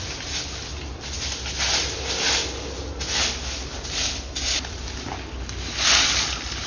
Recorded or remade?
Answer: recorded